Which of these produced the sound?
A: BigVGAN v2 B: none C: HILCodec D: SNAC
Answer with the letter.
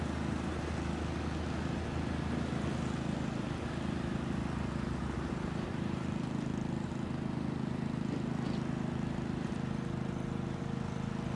B